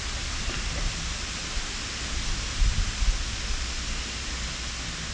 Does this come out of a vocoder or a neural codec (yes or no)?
no